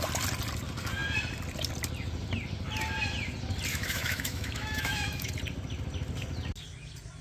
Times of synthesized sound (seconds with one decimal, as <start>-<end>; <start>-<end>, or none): 3.7-5.3